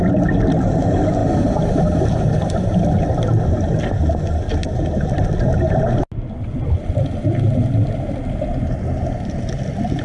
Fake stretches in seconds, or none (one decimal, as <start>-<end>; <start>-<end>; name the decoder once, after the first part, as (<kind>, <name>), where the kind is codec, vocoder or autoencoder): 4.6-5.1 (vocoder, BigVGAN v2)